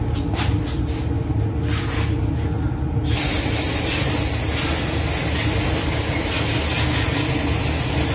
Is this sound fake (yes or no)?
no